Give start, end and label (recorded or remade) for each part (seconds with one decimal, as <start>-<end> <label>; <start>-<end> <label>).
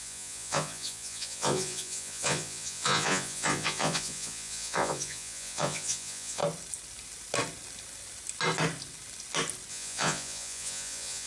0.0-6.4 remade; 6.4-9.7 recorded; 9.7-11.3 remade